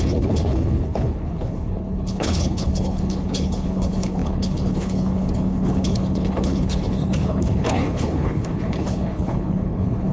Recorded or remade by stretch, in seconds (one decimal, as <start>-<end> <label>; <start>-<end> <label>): 0.0-10.1 remade